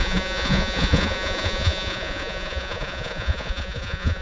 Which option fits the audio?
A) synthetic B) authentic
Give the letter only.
A